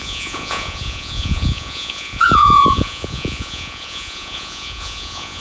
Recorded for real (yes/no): no